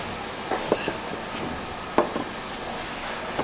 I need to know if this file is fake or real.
real